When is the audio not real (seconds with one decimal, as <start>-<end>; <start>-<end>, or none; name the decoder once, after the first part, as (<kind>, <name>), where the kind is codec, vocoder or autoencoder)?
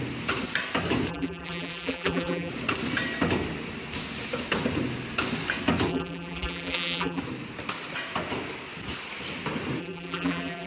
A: 1.1-2.5 (vocoder, BigVGAN v2); 5.9-7.2; 9.8-10.7